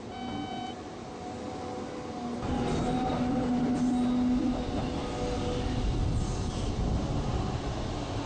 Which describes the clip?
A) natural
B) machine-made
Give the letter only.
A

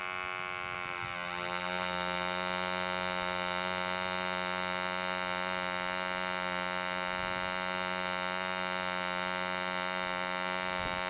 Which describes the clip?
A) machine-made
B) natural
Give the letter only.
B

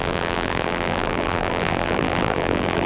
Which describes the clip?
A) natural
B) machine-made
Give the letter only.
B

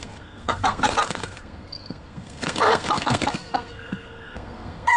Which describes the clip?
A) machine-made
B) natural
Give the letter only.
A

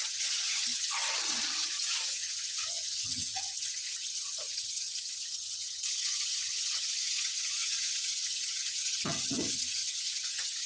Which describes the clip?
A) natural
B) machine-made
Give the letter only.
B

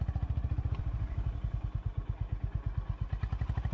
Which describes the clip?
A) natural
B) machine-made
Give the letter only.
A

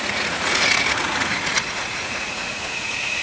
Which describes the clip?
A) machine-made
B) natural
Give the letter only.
A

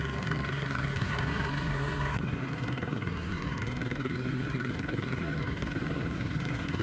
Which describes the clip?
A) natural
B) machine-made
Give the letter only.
B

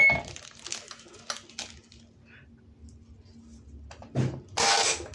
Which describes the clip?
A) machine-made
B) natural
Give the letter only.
B